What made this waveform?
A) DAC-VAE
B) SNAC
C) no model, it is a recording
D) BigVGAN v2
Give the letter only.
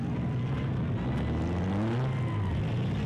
C